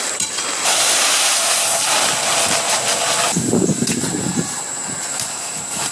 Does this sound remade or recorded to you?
remade